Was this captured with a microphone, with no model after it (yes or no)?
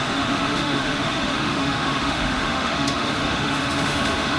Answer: no